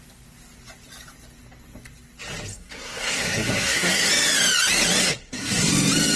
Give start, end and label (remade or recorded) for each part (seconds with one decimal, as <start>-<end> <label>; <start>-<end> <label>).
0.0-2.5 recorded; 2.5-4.1 remade; 4.1-5.0 recorded; 5.0-5.7 remade; 5.7-6.2 recorded